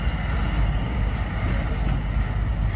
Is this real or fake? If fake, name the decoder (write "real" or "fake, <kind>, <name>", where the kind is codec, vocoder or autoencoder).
real